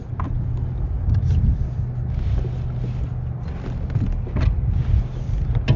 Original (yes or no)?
yes